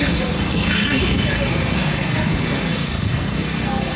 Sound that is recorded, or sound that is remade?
remade